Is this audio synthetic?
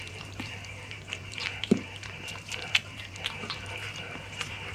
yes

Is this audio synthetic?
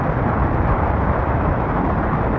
yes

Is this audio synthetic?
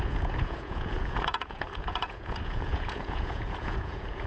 yes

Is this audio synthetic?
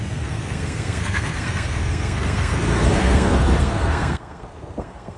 yes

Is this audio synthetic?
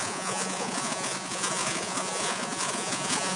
yes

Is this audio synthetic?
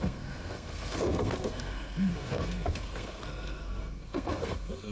yes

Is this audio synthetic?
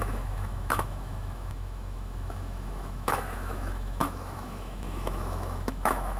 yes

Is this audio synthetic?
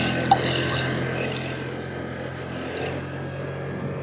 no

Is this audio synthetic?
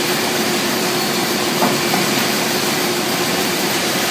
yes